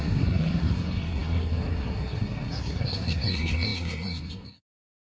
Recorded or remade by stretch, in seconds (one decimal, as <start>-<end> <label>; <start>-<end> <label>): 0.0-5.1 remade